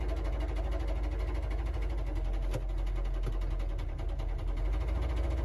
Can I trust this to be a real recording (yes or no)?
yes